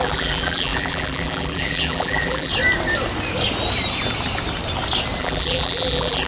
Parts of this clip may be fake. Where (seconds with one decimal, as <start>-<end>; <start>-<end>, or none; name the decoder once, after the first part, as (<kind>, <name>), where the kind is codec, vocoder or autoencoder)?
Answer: 0.0-2.5 (vocoder, BigVGAN v2); 5.2-6.3